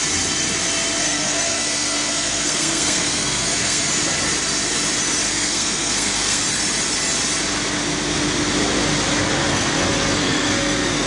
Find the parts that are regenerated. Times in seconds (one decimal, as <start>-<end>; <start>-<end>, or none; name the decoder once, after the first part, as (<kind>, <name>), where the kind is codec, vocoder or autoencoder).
1.0-3.9 (codec, SNAC); 5.3-6.4; 9.5-11.1